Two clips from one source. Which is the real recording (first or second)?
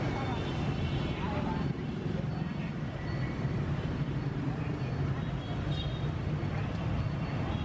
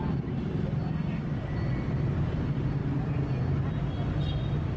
second